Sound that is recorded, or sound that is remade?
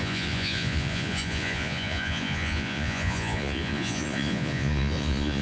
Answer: remade